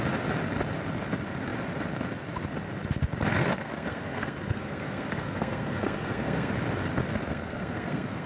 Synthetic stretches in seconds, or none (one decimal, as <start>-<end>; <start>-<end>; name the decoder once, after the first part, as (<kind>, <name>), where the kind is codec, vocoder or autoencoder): 3.3-6.5 (codec, SNAC); 7.3-8.3